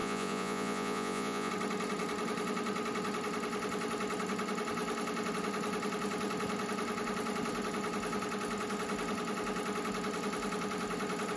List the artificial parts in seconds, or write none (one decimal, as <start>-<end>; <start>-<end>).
0.0-1.5